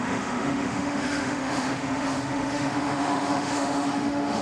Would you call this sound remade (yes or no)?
yes